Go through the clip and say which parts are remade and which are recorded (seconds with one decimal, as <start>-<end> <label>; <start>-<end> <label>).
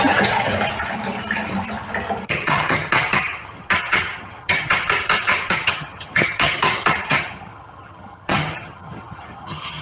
0.0-0.5 remade; 0.5-2.2 recorded; 2.2-9.8 remade